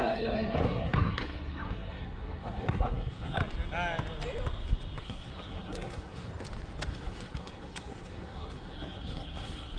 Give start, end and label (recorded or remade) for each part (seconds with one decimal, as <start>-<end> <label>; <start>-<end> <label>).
0.0-3.4 remade; 3.4-5.0 recorded; 5.0-6.3 remade; 6.3-6.9 recorded; 6.9-9.8 remade